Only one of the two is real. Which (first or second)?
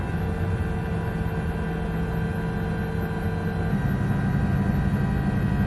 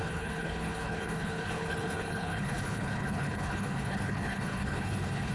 first